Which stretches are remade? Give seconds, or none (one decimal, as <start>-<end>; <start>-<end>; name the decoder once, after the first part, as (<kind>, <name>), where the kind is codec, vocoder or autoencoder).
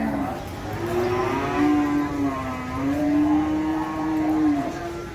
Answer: 3.7-5.1 (vocoder, BigVGAN v2)